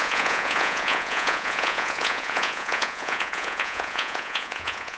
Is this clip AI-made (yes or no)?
yes